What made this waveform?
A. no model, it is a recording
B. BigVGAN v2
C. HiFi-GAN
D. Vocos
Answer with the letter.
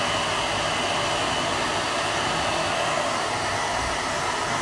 A